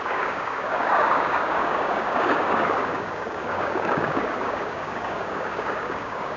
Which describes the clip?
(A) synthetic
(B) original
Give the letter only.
A